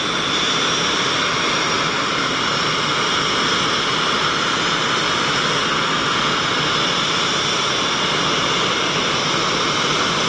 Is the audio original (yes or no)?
yes